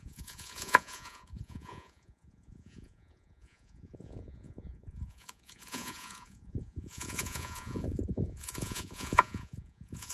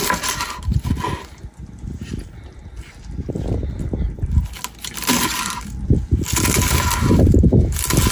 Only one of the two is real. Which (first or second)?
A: second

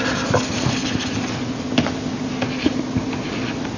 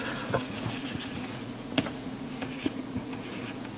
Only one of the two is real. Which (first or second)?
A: first